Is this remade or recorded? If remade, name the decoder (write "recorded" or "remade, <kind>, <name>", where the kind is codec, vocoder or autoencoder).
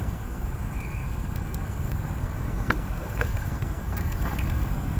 remade, codec, SNAC